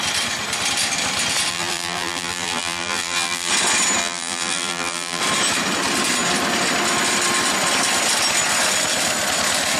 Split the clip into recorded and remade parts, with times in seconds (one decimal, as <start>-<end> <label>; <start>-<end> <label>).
0.0-1.5 recorded; 1.5-3.5 remade; 3.5-4.0 recorded; 4.0-5.2 remade; 5.2-9.8 recorded